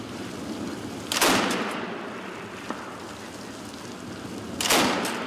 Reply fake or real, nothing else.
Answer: real